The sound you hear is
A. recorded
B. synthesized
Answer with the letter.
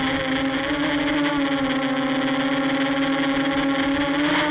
A